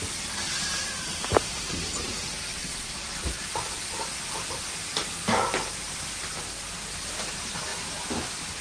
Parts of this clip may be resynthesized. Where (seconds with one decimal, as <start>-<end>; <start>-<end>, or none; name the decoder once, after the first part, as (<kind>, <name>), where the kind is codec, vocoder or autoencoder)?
2.5-3.4 (vocoder, WaveNeXt)